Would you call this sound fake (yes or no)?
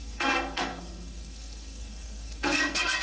yes